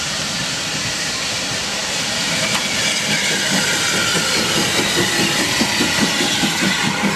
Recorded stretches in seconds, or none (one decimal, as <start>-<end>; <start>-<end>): none